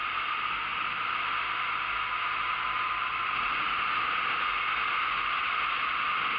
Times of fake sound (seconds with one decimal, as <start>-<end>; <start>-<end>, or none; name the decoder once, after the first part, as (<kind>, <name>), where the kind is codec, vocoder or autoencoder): none